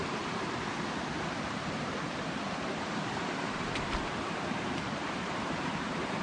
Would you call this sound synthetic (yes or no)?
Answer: yes